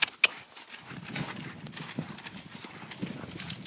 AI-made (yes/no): no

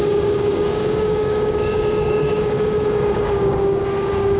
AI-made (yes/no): yes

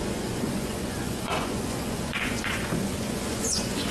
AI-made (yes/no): yes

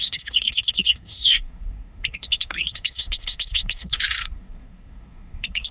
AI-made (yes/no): yes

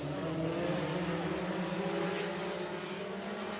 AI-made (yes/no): no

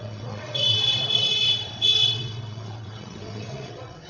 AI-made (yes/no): yes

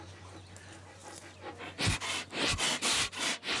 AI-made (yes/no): no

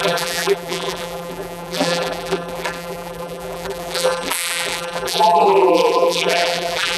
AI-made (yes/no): yes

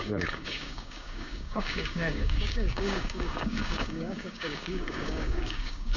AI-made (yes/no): yes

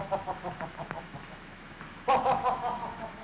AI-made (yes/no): yes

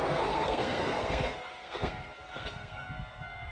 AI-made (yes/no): yes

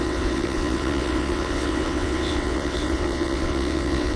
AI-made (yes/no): yes